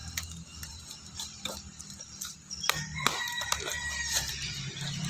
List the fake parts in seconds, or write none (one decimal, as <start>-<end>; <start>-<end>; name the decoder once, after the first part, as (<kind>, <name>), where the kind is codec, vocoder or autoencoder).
0.6-5.1 (vocoder, BigVGAN v2)